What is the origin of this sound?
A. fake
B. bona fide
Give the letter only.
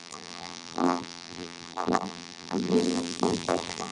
A